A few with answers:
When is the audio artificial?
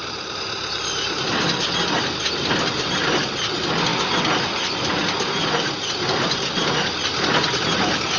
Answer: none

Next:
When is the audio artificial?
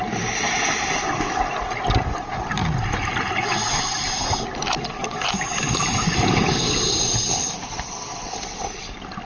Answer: none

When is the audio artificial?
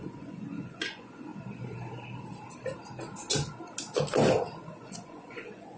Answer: 0.0-1.3 (vocoder, Vocos); 4.8-5.8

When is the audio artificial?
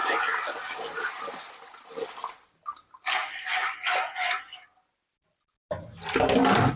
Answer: none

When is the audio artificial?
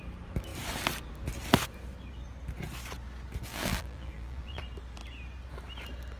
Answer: 3.5-4.6 (vocoder, BigVGAN v2)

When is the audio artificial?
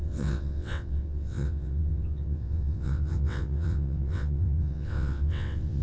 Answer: 0.0-5.8 (vocoder, WaveNeXt)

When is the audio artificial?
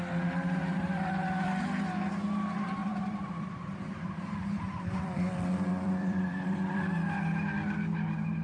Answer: 2.8-6.8 (vocoder, BigVGAN v2)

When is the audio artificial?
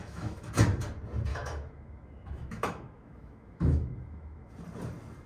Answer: 0.0-0.5 (autoencoder, DAC-VAE); 1.3-4.5